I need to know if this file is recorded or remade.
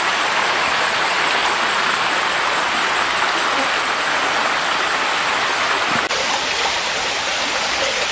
recorded